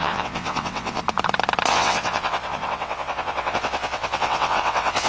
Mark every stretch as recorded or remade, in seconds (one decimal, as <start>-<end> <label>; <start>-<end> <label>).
0.0-1.0 remade; 1.0-1.7 recorded; 1.7-5.1 remade